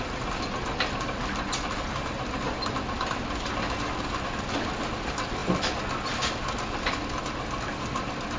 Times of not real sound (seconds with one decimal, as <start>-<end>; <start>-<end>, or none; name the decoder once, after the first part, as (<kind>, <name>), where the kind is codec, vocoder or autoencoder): none